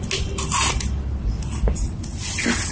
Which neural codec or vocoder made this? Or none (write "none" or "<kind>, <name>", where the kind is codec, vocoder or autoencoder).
none